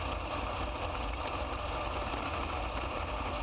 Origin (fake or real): real